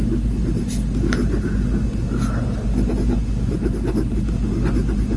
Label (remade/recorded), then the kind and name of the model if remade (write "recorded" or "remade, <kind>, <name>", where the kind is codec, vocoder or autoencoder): recorded